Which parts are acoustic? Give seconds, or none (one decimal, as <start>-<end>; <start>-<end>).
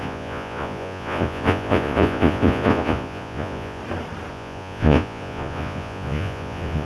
3.8-4.3